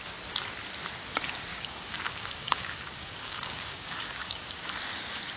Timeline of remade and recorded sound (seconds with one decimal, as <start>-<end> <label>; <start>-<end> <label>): 0.0-1.5 recorded; 1.5-4.7 remade; 4.7-5.4 recorded